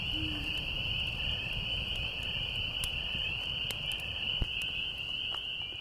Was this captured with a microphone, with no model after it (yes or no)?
yes